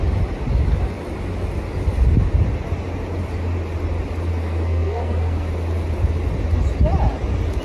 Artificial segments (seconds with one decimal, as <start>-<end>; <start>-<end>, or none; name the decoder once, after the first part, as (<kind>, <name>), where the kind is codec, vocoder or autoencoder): 4.3-5.5 (codec, SNAC)